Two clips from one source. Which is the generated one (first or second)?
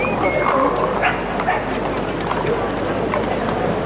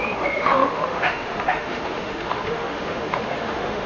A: second